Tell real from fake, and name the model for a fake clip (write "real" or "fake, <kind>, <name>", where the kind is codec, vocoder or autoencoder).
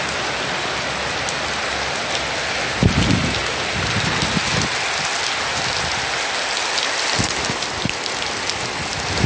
real